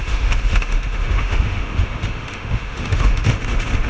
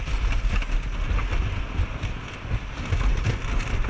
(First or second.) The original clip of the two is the second